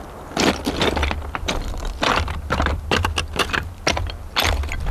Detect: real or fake real